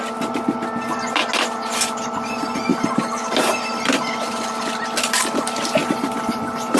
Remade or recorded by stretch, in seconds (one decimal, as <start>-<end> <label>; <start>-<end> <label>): 0.0-2.7 recorded; 2.7-6.8 remade